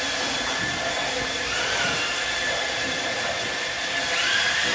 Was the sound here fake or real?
real